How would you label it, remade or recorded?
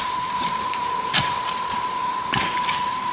recorded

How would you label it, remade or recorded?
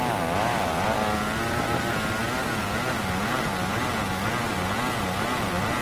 recorded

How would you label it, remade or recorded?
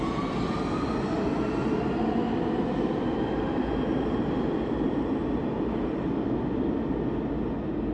recorded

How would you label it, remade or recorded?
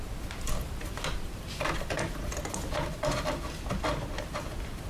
recorded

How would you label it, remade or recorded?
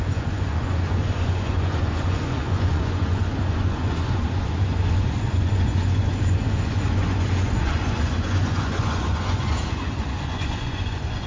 remade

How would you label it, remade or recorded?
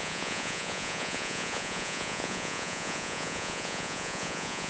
remade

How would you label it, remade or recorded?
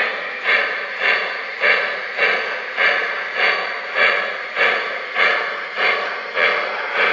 remade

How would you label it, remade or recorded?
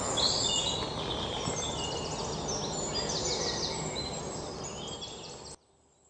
recorded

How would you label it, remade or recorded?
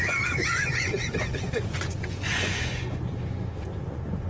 remade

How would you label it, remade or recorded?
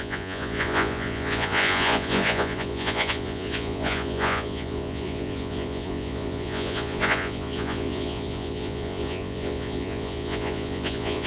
remade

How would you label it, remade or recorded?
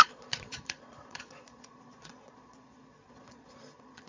remade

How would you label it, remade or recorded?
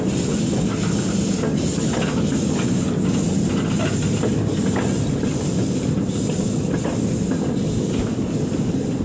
recorded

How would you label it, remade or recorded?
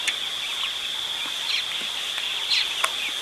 recorded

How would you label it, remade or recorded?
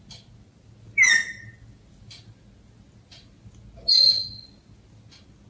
recorded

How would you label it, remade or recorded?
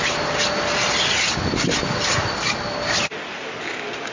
recorded